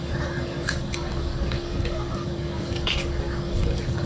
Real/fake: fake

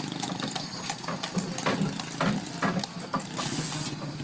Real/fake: real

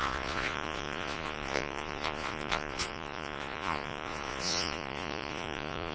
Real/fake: fake